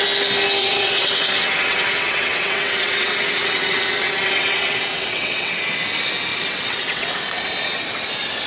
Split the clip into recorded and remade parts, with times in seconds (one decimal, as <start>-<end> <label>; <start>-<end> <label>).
0.0-0.6 recorded; 0.6-5.6 remade; 5.6-6.3 recorded; 6.3-7.1 remade; 7.1-8.5 recorded